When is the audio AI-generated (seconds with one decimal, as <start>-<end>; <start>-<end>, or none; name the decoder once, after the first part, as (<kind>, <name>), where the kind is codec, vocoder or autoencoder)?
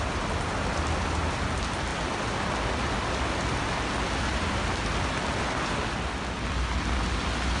none